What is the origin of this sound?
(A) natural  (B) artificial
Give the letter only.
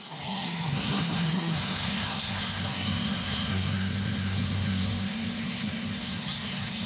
B